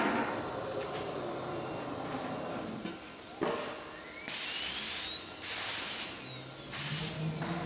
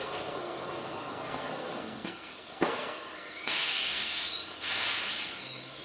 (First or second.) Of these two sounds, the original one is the first